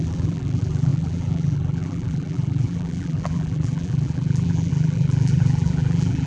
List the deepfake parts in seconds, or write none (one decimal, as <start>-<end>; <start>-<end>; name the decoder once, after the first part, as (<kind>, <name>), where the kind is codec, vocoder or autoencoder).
0.0-6.3 (vocoder, BigVGAN v2)